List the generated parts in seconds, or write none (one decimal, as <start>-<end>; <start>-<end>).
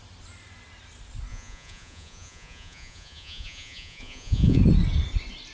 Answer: 1.3-4.6